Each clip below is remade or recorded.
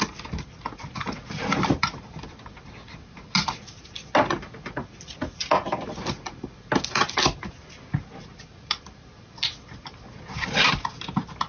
recorded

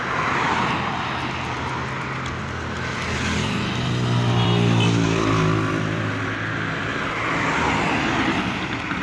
recorded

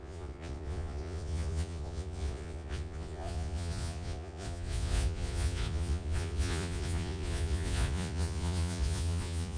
remade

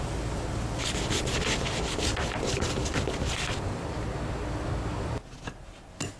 recorded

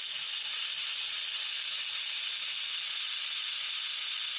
recorded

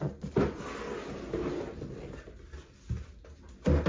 recorded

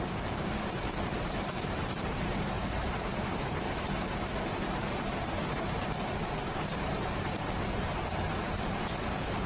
remade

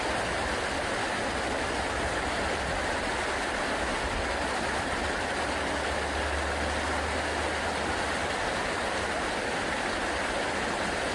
recorded